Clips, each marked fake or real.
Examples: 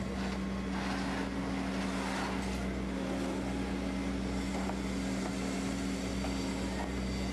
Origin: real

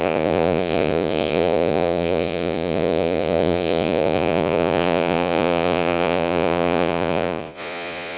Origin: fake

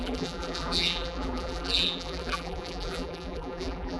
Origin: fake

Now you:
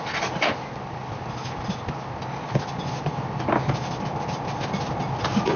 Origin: real